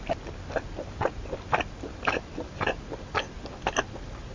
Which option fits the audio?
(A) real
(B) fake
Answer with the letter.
A